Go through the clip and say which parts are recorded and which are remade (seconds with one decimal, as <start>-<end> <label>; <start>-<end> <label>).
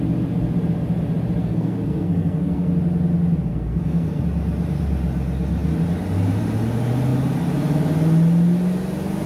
0.0-1.4 recorded; 1.4-2.7 remade; 2.7-3.5 recorded; 3.5-4.2 remade; 4.2-9.3 recorded